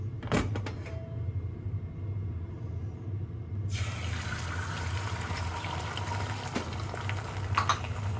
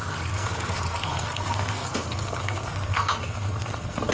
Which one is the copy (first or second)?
second